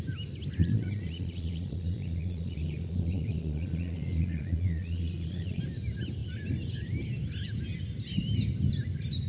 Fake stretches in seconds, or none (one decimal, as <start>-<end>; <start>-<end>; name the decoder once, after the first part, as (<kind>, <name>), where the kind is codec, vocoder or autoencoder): 0.6-5.6 (vocoder, Vocos)